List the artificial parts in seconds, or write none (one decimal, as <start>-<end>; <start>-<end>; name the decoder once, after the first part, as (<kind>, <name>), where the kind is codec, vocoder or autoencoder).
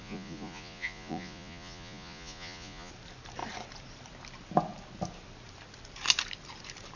0.0-2.9 (vocoder, Vocos)